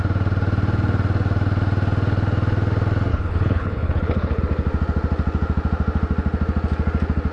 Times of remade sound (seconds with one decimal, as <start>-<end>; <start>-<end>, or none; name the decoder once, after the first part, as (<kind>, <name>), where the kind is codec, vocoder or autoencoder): 3.1-4.4 (codec, HILCodec)